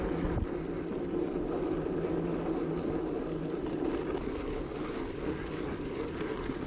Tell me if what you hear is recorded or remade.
recorded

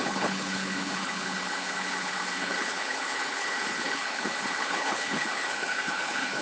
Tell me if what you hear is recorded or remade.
remade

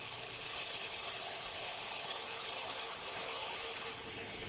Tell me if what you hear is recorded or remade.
remade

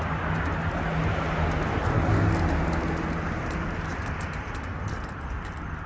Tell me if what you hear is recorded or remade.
recorded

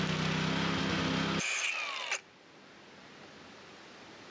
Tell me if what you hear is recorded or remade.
recorded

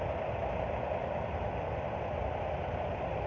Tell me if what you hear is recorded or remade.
recorded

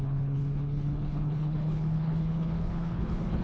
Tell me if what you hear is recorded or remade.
remade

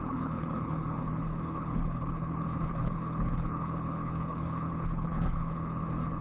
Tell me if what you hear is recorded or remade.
remade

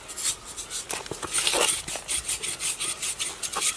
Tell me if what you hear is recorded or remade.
recorded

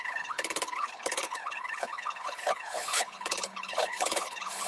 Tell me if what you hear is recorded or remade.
remade